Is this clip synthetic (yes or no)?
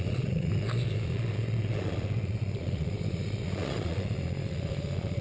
yes